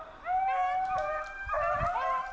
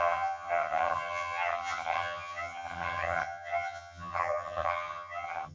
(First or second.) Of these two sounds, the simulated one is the second